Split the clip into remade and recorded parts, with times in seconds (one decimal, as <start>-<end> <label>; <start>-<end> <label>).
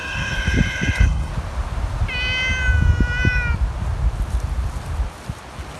0.0-1.3 remade; 1.3-5.8 recorded